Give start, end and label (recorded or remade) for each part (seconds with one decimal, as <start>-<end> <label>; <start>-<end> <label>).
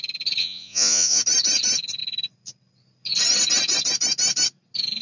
0.0-0.4 recorded; 0.4-1.2 remade; 1.2-5.0 recorded